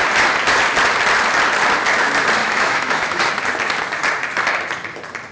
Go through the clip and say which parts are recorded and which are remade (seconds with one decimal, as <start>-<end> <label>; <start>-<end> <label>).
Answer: 0.0-2.4 recorded; 2.4-3.3 remade; 3.3-5.3 recorded